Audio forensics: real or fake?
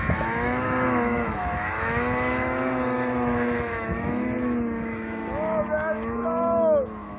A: fake